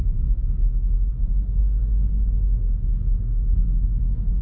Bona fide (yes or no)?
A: no